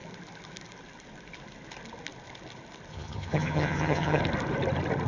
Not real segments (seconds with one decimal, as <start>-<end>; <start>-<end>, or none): 2.9-4.2